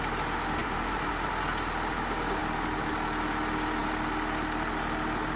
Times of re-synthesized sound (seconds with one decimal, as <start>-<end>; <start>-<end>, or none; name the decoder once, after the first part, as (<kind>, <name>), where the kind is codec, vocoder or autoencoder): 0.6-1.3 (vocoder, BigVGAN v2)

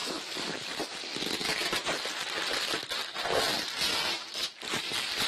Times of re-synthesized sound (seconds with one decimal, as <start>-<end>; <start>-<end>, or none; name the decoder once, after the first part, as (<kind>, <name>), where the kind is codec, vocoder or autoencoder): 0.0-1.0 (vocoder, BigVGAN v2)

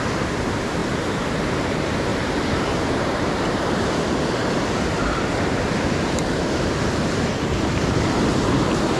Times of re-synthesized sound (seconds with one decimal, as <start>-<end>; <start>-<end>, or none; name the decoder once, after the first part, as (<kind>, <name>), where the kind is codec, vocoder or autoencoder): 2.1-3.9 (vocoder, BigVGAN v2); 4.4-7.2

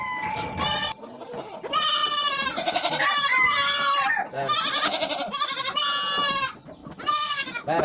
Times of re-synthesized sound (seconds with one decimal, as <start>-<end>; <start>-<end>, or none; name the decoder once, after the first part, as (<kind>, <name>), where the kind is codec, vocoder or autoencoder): none

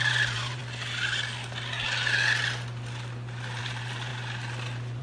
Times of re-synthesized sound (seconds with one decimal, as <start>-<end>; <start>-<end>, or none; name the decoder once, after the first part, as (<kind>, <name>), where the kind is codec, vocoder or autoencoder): 0.0-0.6 (vocoder, BigVGAN v2); 3.6-4.1